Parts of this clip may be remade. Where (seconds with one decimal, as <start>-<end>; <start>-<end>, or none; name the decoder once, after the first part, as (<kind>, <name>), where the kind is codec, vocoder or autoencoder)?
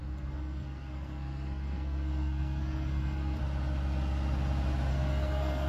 0.0-3.4 (codec, SNAC); 4.9-5.7